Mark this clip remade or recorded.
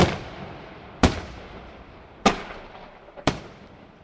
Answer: remade